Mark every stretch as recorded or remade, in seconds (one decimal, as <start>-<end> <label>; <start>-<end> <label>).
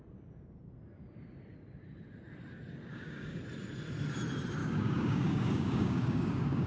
0.0-2.9 recorded; 2.9-3.4 remade; 3.4-4.6 recorded; 4.6-6.7 remade